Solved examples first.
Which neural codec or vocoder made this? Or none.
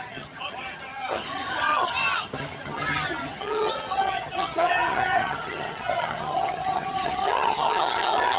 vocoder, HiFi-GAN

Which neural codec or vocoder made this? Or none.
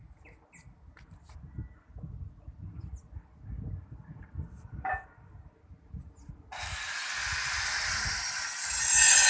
none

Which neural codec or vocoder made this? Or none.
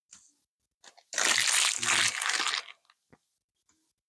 none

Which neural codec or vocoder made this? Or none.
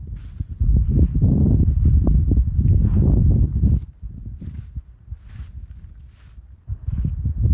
none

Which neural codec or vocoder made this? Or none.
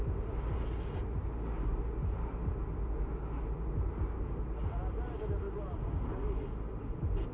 none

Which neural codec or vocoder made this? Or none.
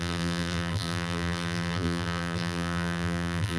vocoder, BigVGAN v2